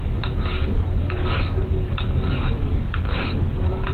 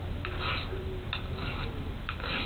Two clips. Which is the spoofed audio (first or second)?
first